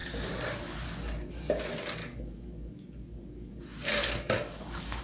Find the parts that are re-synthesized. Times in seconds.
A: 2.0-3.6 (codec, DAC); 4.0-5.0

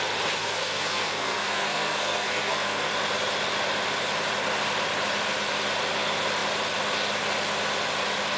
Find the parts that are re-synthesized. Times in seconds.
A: 0.4-2.9 (codec, SNAC)

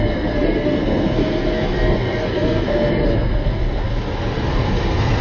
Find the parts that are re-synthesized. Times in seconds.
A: 0.0-3.9 (codec, SNAC); 4.5-5.2